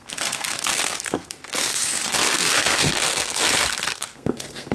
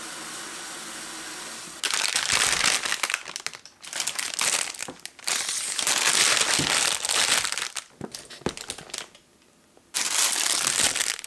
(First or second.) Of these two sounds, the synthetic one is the first